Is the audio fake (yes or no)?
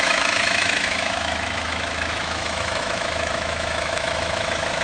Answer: yes